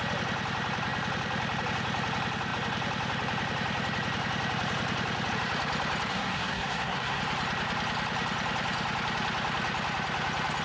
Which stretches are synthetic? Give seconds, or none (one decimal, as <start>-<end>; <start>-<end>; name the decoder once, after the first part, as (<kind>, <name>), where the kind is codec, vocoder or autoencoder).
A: 6.1-7.2 (codec, SNAC)